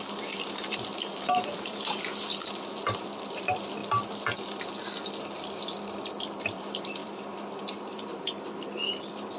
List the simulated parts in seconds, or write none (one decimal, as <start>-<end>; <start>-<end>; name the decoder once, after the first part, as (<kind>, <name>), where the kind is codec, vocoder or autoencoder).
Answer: 0.0-3.8 (vocoder, BigVGAN v2); 6.2-9.4